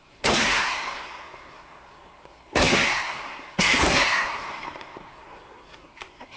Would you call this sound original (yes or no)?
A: no